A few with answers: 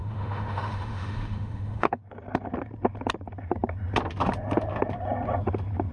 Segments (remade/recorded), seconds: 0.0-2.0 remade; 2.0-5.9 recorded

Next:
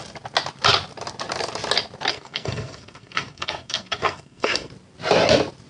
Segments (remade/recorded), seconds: 0.0-2.1 recorded; 2.1-4.7 remade; 4.7-5.7 recorded

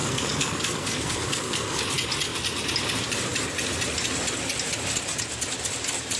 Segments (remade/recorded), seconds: 0.0-1.8 remade; 1.8-6.2 recorded

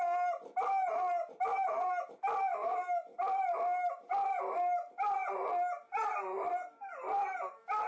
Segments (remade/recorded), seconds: 0.0-2.5 recorded; 2.5-3.0 remade; 3.0-7.9 recorded

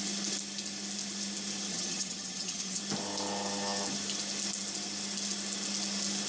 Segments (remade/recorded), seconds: 0.0-1.7 recorded; 1.7-2.8 remade; 2.8-6.3 recorded